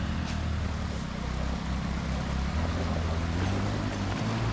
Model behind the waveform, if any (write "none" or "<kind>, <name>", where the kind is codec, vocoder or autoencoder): none